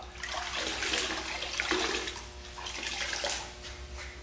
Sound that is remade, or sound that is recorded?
recorded